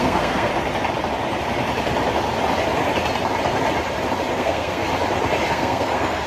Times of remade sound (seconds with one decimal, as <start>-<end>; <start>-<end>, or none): 0.0-0.5; 4.3-4.9; 5.5-6.3